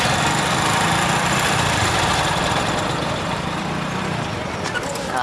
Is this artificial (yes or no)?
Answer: yes